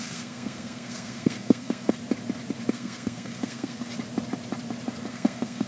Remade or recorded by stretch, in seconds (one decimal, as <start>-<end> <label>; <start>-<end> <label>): 0.0-2.0 remade; 2.0-2.7 recorded; 2.7-3.9 remade; 3.9-5.1 recorded; 5.1-5.7 remade